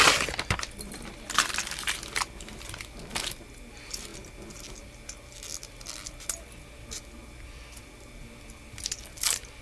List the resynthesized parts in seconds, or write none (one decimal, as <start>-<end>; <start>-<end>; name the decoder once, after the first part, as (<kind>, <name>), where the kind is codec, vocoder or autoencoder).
none